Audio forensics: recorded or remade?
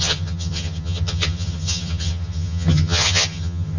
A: remade